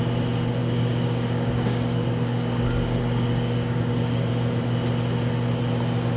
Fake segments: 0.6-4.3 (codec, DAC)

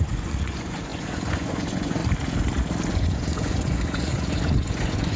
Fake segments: 0.0-2.0 (vocoder, Vocos); 2.9-5.2

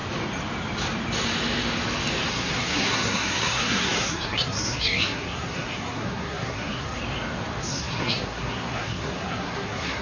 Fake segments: 2.3-7.0 (codec, SNAC); 7.6-10.0

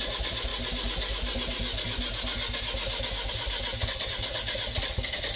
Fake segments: none

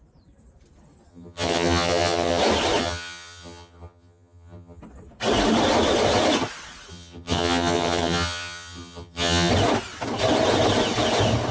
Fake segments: 1.1-2.4 (vocoder, HiFi-GAN); 2.8-4.8; 6.9-9.5

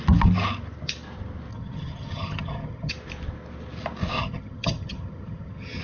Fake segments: 1.5-2.9 (vocoder, HiFi-GAN); 4.2-5.8

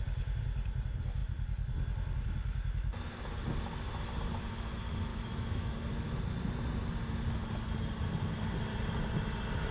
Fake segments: 5.1-5.7 (autoencoder, DAC-VAE)

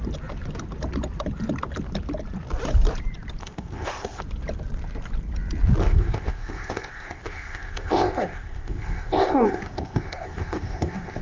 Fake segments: 3.4-4.2 (codec, ZipCodec); 5.8-11.2